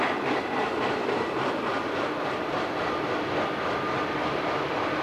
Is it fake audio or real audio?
real